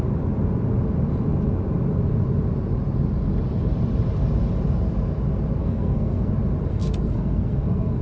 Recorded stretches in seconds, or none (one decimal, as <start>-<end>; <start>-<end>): 0.0-5.6; 6.3-6.7